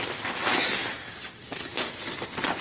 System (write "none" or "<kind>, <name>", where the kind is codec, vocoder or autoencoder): none